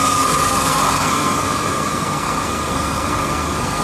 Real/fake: fake